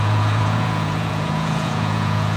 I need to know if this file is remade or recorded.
remade